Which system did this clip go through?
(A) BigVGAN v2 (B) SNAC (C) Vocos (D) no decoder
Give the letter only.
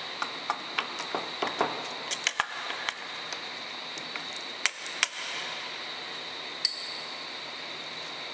D